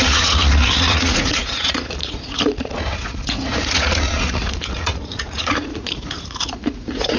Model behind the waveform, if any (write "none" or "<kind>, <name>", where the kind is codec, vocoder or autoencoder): vocoder, Vocos